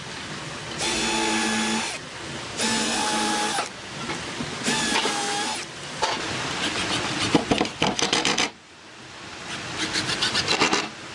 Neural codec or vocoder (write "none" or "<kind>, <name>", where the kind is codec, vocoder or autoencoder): none